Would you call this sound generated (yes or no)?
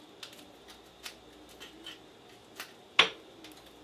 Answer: no